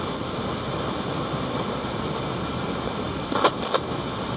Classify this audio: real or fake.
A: real